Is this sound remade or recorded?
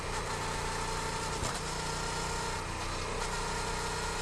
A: recorded